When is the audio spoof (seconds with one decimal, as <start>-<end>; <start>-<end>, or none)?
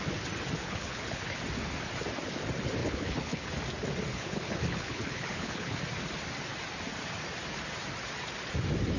0.6-1.4; 2.8-3.5; 4.1-5.8